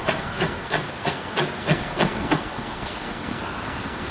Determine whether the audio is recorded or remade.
remade